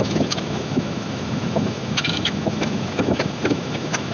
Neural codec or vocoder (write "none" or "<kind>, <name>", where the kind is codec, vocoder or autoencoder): autoencoder, DAC-VAE